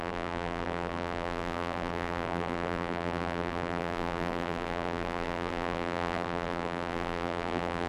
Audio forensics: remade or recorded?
remade